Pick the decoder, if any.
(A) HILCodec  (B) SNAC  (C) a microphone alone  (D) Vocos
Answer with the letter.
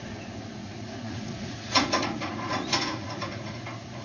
D